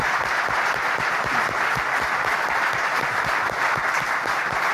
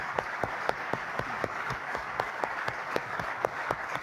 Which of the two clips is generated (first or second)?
second